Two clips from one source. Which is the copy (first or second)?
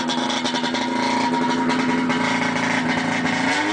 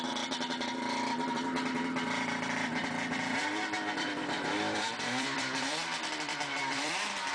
second